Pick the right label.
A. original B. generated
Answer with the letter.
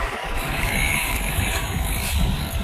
B